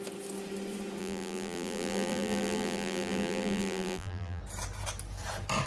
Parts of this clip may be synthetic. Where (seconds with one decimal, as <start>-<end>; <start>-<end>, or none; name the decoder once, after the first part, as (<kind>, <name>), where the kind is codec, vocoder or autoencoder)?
1.0-4.4 (vocoder, BigVGAN v2)